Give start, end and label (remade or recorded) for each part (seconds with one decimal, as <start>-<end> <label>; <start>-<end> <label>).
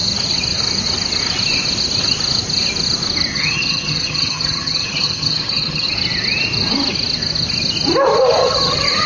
0.0-3.3 recorded; 3.3-5.9 remade; 5.9-8.4 recorded; 8.4-9.1 remade